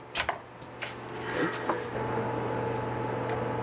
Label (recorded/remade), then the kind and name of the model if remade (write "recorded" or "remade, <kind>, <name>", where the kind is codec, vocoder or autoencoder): recorded